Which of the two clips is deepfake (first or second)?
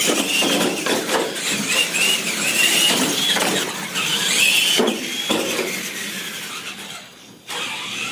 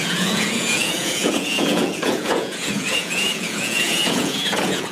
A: second